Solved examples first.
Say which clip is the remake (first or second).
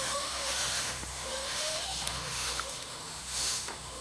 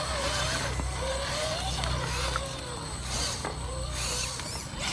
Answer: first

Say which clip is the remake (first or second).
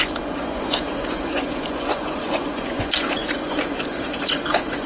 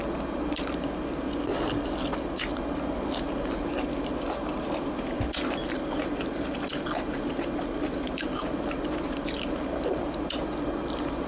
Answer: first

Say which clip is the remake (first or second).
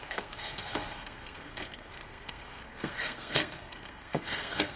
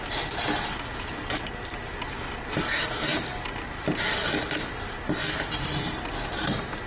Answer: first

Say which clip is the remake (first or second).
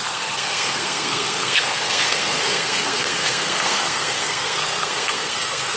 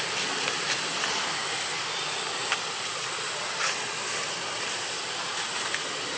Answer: first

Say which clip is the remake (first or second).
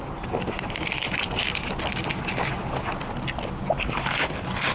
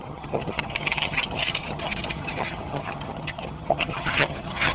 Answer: second